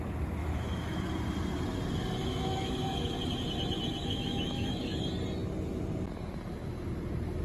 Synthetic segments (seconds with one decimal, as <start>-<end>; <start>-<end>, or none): 0.4-1.0; 2.2-3.2; 4.0-5.0